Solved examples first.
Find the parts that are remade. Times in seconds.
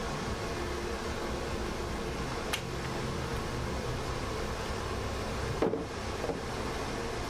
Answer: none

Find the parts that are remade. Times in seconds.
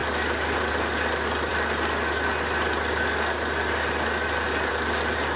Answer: none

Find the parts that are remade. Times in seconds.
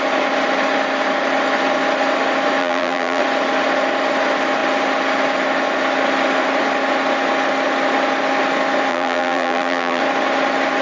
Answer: 2.6-3.2 (vocoder, BigVGAN v2); 8.9-10.0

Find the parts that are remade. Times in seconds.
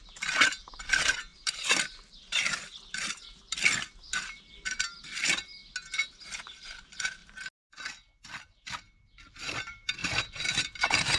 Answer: 0.0-5.6 (vocoder, BigVGAN v2); 6.4-7.2; 8.7-11.2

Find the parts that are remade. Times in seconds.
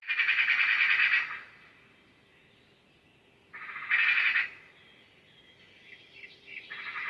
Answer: none